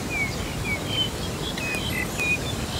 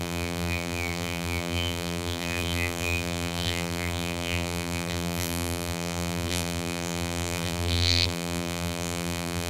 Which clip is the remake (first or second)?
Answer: second